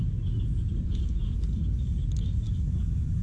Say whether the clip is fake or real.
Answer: real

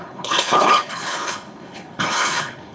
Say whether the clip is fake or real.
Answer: fake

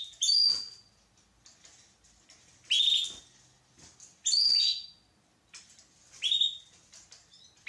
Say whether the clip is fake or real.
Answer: real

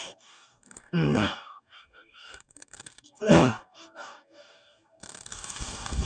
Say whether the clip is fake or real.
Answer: fake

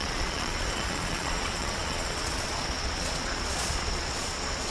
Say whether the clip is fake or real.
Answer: fake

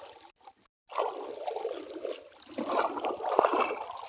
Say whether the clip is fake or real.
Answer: real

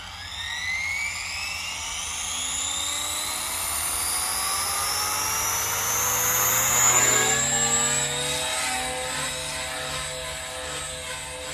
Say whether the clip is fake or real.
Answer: real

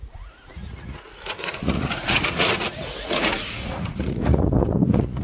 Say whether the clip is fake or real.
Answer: fake